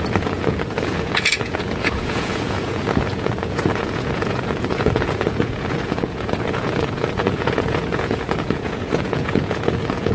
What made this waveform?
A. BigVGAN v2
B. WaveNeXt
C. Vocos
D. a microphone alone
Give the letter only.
C